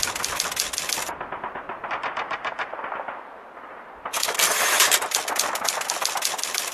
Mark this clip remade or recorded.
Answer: recorded